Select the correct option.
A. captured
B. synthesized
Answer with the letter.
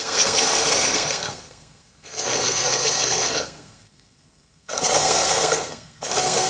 B